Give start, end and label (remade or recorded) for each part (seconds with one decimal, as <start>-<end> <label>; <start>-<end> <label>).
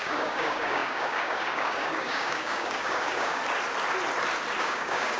0.0-3.4 remade; 3.4-4.6 recorded; 4.6-5.2 remade